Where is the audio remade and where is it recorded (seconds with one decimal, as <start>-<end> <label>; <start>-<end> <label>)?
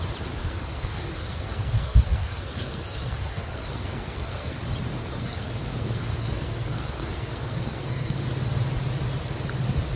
0.0-0.4 recorded; 0.4-4.6 remade; 4.6-5.0 recorded; 5.0-8.2 remade; 8.2-10.0 recorded